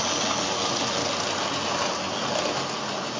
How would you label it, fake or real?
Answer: real